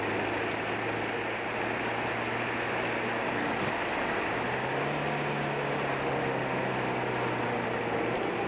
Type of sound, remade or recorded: recorded